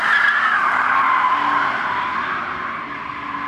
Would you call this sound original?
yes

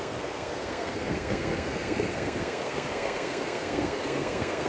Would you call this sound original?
no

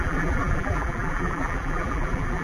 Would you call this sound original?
no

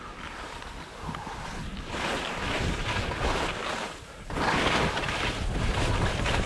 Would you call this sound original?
yes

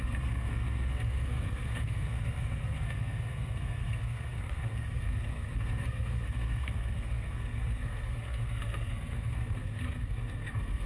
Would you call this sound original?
no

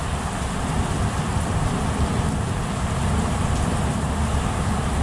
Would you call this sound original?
no